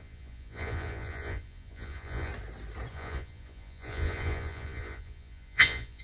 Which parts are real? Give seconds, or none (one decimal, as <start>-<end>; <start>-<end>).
2.3-2.9